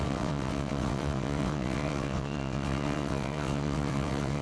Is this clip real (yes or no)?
no